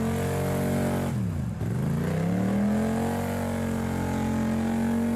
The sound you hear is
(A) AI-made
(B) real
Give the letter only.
B